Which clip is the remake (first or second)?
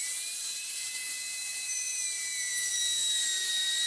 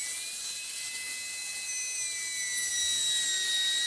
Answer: first